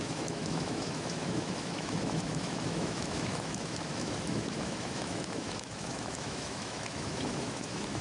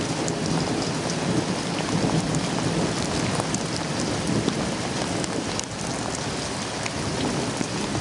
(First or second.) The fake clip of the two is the first